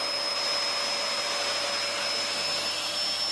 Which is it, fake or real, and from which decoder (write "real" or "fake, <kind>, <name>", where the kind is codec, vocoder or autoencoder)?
real